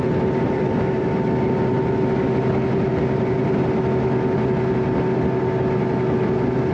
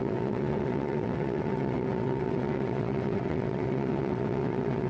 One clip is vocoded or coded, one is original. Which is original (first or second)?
first